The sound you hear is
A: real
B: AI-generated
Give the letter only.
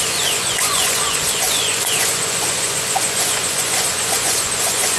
B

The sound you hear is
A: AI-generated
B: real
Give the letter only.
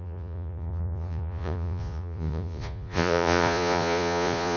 A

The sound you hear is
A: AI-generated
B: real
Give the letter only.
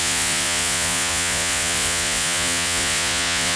A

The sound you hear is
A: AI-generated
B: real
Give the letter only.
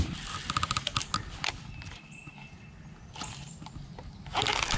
B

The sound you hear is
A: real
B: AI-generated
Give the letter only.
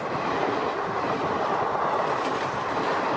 A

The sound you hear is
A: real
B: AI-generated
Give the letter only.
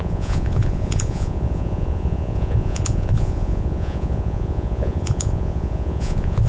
B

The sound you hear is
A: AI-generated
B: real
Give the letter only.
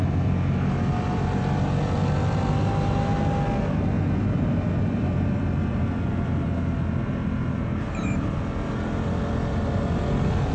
B